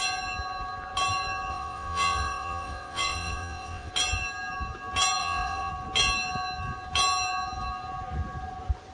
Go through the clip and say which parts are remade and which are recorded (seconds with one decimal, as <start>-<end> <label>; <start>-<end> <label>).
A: 0.0-1.5 recorded; 1.5-3.9 remade; 3.9-5.2 recorded; 5.2-5.7 remade; 5.7-8.9 recorded